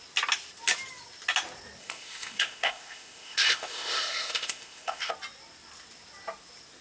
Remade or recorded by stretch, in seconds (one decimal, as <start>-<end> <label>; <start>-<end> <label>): 0.0-1.8 recorded; 1.8-5.1 remade; 5.1-6.8 recorded